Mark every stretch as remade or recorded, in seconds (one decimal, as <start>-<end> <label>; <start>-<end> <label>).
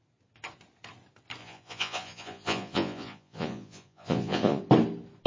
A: 0.0-1.4 recorded; 1.4-4.6 remade; 4.6-5.3 recorded